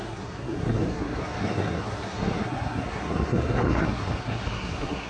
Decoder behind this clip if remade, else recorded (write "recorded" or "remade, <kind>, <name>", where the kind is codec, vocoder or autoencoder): remade, codec, SNAC